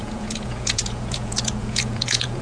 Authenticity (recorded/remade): remade